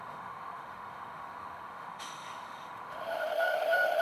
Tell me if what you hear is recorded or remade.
remade